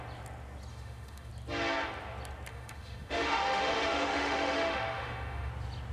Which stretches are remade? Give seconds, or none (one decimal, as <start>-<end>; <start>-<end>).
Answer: 0.7-1.3; 2.5-5.5